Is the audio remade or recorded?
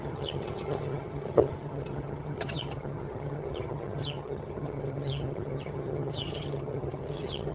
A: remade